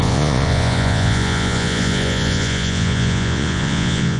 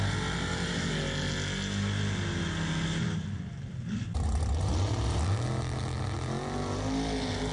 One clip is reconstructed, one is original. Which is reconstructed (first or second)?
first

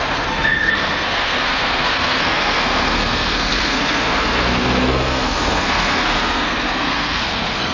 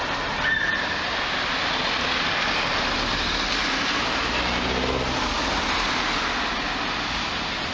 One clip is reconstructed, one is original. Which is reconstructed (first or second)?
first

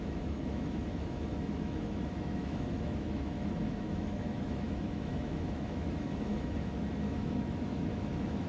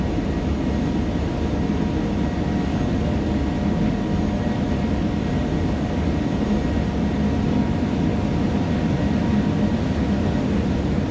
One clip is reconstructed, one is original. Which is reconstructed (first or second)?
first